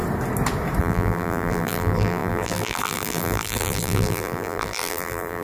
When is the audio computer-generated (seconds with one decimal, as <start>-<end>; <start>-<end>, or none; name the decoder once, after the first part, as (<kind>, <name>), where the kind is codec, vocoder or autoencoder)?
0.8-5.4 (vocoder, BigVGAN v2)